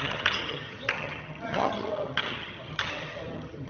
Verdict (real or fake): fake